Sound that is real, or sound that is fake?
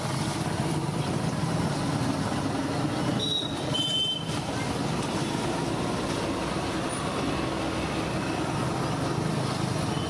real